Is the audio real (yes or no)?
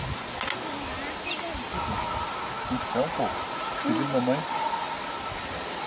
yes